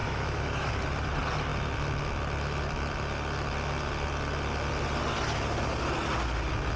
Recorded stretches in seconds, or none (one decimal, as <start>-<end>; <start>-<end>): 0.7-6.8